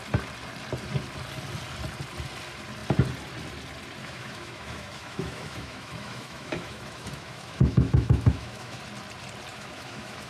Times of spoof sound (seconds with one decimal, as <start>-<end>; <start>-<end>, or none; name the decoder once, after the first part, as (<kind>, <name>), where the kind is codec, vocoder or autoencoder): 4.0-8.8 (autoencoder, DAC-VAE); 9.5-10.3